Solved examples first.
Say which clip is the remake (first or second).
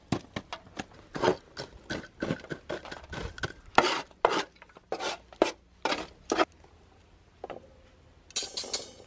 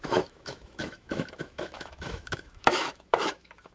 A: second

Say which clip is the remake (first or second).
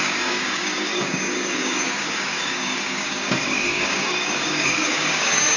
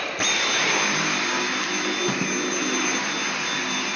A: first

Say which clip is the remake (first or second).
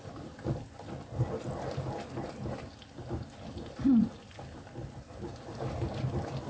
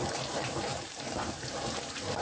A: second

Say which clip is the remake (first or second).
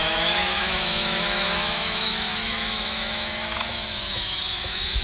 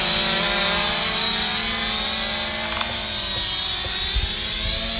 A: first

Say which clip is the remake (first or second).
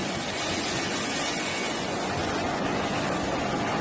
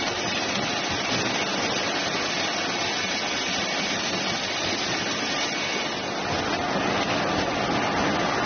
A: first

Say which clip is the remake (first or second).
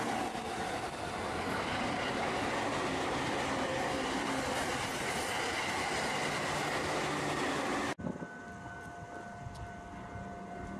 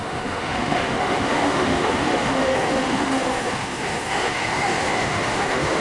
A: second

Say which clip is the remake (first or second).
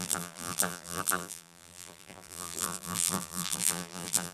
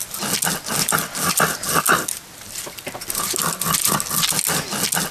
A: first